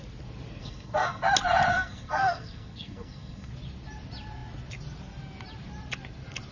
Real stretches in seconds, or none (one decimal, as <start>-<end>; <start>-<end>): 0.0-0.6; 1.2-1.7; 3.5-6.5